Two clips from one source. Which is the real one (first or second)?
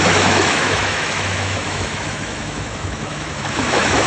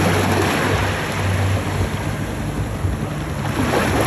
second